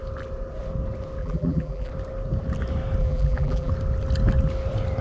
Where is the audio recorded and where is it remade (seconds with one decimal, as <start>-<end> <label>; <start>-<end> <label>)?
0.0-1.2 recorded; 1.2-1.9 remade; 1.9-3.0 recorded; 3.0-3.7 remade; 3.7-5.0 recorded